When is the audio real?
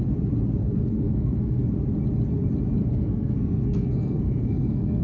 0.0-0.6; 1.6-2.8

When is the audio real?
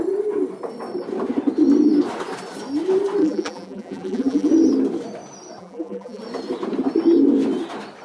0.0-3.2; 4.5-5.6; 6.2-8.0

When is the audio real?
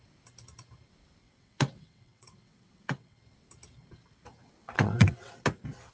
0.0-1.2; 3.2-4.6; 5.3-5.9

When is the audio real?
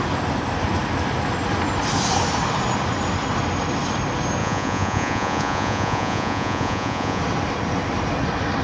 0.0-4.4; 7.2-8.6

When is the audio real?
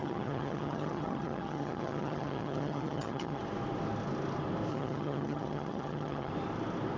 3.4-4.7; 6.3-7.0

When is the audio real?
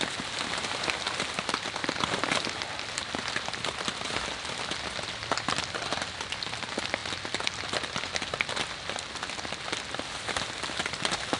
0.0-11.4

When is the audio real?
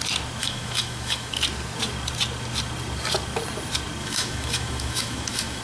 0.0-0.4; 1.3-4.0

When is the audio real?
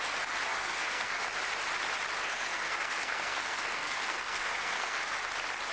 0.0-0.5; 1.2-2.2; 5.2-5.7